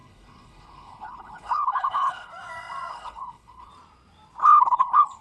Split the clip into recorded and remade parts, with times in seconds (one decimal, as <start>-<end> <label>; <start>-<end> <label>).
0.0-2.3 remade; 2.3-2.9 recorded; 2.9-3.7 remade; 3.7-4.4 recorded; 4.4-5.2 remade